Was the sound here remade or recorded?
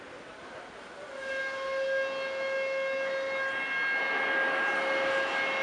recorded